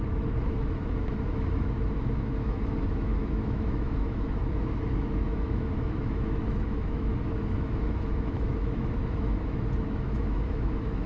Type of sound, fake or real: fake